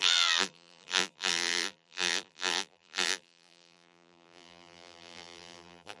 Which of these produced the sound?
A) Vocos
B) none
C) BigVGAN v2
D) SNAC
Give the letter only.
C